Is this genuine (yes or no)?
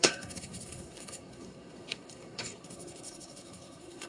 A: no